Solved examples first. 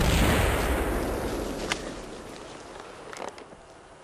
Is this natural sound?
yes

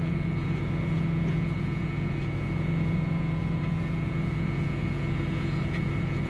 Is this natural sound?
no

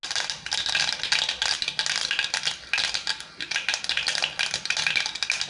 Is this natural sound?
yes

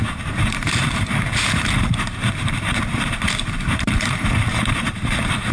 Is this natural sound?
no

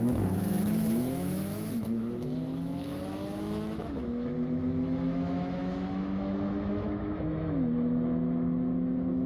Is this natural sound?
no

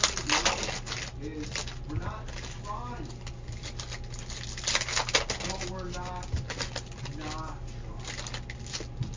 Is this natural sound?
yes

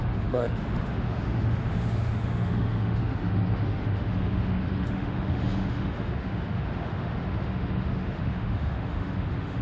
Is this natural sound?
no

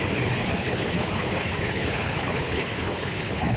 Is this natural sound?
no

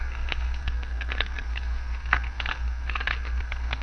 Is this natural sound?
no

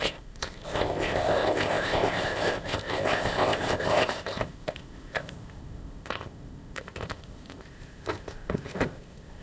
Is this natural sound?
no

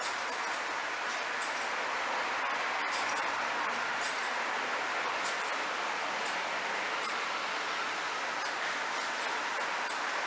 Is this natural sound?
yes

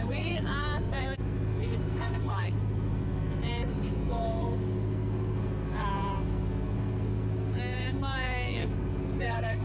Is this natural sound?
no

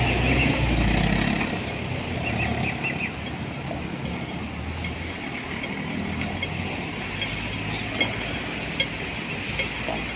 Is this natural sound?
yes